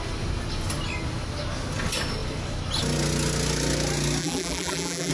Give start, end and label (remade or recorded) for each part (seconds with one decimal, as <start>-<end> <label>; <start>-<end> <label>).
0.0-4.2 recorded; 4.2-5.1 remade